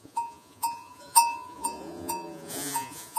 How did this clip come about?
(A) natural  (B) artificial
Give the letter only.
B